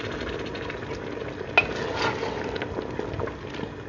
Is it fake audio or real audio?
real